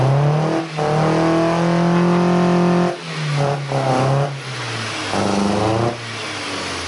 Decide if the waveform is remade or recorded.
recorded